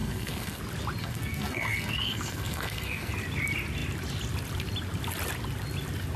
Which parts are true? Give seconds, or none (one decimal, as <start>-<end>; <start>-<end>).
0.6-1.0; 3.1-6.2

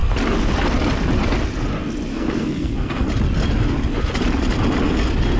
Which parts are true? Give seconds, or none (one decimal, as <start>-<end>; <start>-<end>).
0.0-2.1; 3.1-5.4